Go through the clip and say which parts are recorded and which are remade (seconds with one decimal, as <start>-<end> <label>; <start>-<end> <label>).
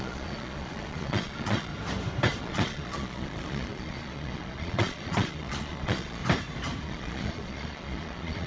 0.0-1.7 remade; 1.7-2.4 recorded; 2.4-6.2 remade; 6.2-6.8 recorded; 6.8-8.5 remade